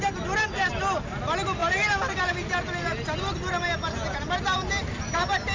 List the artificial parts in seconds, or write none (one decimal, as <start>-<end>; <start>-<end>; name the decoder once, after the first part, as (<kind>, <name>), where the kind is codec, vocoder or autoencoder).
none